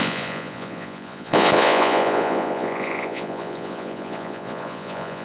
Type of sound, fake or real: fake